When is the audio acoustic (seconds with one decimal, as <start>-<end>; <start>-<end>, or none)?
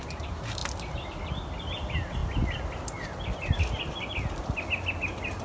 0.0-5.4